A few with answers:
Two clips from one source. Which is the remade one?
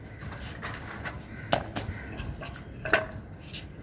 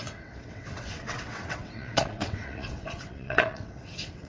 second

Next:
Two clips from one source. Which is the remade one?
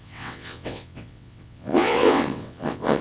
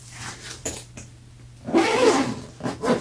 first